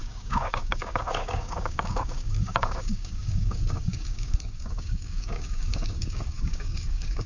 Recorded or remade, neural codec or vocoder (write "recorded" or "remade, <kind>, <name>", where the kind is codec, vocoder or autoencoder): remade, codec, DAC